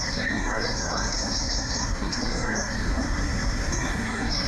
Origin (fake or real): fake